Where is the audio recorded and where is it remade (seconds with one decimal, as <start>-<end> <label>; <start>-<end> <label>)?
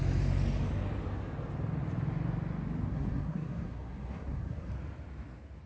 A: 0.0-2.9 recorded; 2.9-4.7 remade; 4.7-5.7 recorded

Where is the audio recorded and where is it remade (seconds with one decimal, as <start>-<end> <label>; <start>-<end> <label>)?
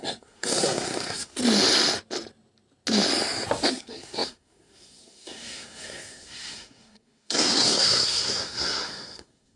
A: 0.0-1.4 remade; 1.4-3.7 recorded; 3.7-9.6 remade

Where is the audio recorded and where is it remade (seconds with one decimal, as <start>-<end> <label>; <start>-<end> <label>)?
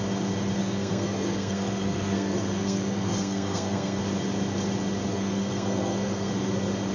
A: 0.0-0.6 recorded; 0.6-4.0 remade; 4.0-5.1 recorded; 5.1-6.3 remade; 6.3-6.9 recorded